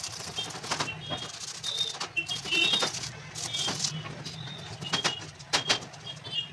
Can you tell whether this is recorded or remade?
recorded